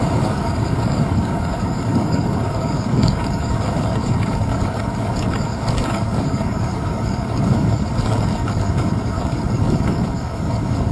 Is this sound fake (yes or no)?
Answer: yes